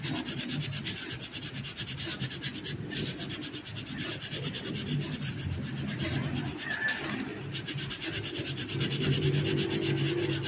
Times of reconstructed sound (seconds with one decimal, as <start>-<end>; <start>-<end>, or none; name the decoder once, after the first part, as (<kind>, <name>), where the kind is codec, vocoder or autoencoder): none